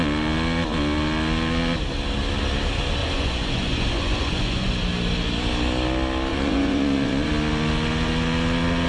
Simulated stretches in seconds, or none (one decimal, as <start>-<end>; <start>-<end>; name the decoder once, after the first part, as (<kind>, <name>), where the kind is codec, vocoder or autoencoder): 3.0-4.7 (vocoder, Vocos); 6.3-7.3